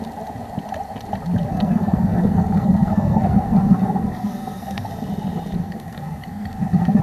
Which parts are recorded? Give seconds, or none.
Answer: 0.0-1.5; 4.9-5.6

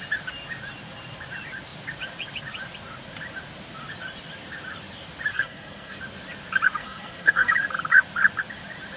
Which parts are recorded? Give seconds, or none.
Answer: 0.0-5.3; 6.0-6.8; 7.5-9.0

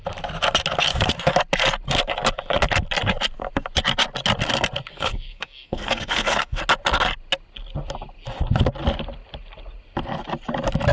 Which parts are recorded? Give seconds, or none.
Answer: 0.0-4.9; 6.6-10.9